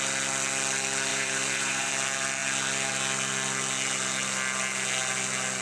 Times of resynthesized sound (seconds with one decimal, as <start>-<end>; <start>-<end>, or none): 1.1-1.9